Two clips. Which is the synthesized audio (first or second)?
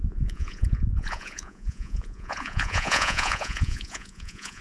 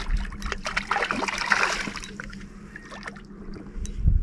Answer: first